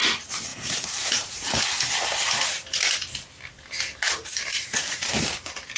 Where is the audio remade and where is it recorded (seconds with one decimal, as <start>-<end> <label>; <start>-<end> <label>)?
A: 0.0-0.5 recorded; 0.5-1.6 remade; 1.6-4.2 recorded; 4.2-5.8 remade